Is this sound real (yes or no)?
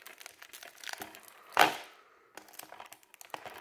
yes